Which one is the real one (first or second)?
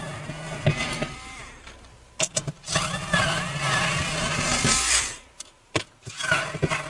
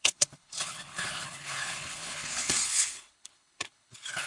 first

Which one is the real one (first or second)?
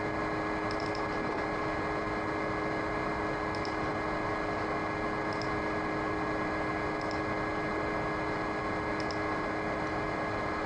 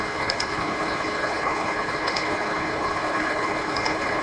first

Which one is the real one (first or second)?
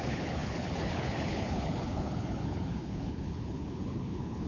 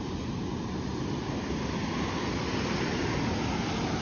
second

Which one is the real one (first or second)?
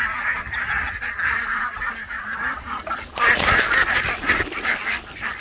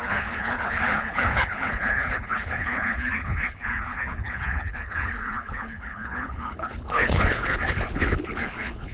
first